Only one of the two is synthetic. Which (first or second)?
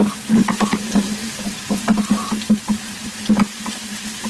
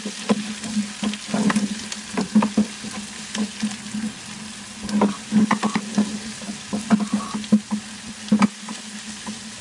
first